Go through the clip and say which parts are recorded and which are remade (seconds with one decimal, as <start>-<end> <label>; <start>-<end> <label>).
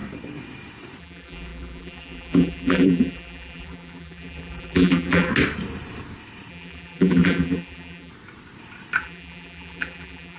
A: 0.0-1.0 recorded; 1.0-5.3 remade; 5.3-6.5 recorded; 6.5-8.1 remade; 8.1-9.0 recorded; 9.0-10.4 remade